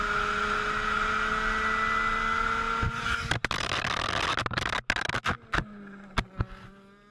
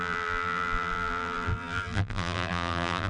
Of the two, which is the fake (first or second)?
second